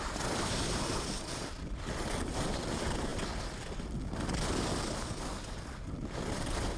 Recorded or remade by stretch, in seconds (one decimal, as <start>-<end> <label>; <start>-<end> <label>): 0.0-3.1 remade; 3.1-6.3 recorded; 6.3-6.8 remade